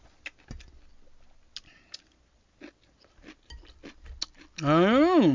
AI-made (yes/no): no